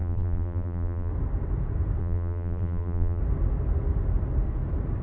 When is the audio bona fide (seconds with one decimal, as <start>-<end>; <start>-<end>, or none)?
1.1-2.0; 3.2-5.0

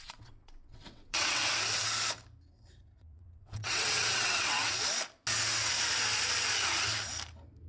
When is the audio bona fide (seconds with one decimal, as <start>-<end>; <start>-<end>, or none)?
1.4-2.8; 4.6-7.7

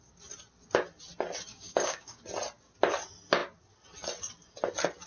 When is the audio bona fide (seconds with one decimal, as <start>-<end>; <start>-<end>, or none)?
0.0-1.5; 2.2-5.1

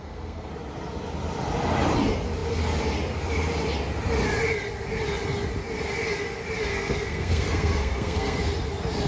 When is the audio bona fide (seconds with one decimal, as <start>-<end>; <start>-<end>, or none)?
0.5-6.7; 8.4-9.1

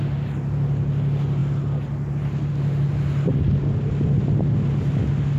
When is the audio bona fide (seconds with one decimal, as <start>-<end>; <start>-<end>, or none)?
0.0-1.4; 2.5-5.4

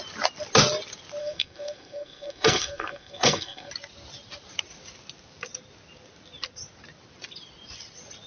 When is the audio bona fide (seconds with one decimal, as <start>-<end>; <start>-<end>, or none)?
0.0-1.2; 3.7-8.3

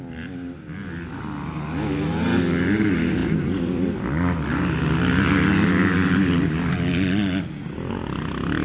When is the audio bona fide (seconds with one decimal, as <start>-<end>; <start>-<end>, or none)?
0.0-8.6